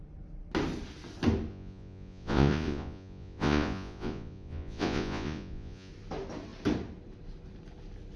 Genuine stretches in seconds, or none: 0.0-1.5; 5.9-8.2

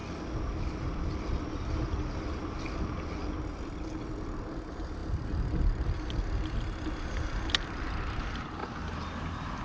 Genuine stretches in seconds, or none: 0.0-9.6

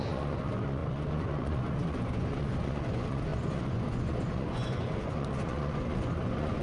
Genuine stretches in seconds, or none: none

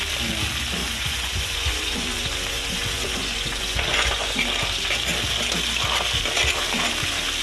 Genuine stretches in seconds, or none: 0.0-0.8; 4.4-7.4

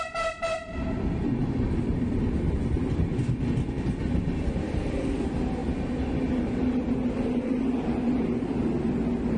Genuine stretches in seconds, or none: 0.0-9.4